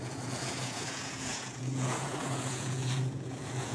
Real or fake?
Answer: fake